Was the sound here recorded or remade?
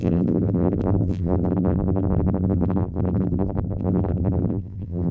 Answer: remade